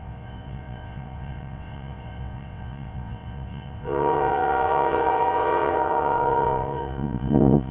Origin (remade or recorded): remade